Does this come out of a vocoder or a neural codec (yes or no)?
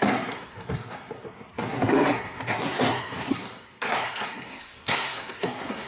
yes